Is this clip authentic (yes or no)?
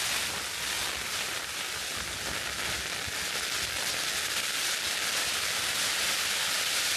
yes